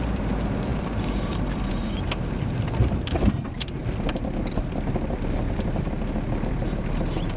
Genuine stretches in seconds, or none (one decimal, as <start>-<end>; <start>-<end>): 3.8-6.5